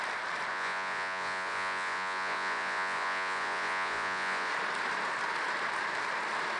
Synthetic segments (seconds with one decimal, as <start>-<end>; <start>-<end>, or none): 0.5-4.5